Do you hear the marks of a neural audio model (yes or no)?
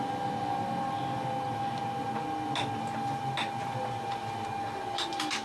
no